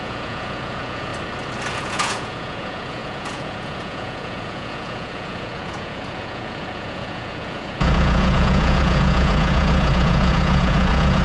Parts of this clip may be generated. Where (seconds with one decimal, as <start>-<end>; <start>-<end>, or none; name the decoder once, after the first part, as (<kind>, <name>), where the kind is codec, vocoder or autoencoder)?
0.0-1.1 (vocoder, Vocos); 1.7-11.2